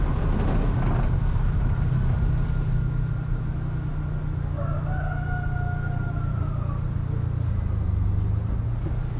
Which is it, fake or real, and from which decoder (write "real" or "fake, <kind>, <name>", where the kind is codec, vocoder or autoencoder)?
real